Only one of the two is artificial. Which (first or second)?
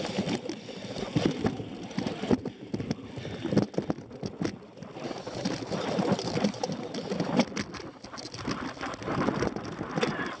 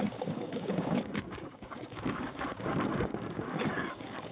second